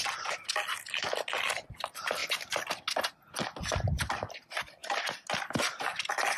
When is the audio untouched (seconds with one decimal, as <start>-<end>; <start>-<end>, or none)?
0.0-6.4